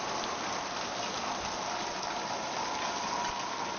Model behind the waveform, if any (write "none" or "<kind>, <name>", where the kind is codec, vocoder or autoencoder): none